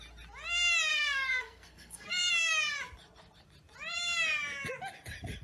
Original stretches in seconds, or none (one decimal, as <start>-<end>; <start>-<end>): 0.0-0.9; 2.3-5.4